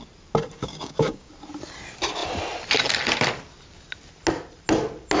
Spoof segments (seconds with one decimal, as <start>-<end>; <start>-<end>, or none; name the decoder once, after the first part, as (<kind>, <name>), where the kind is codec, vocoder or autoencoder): 0.6-1.3 (codec, DAC)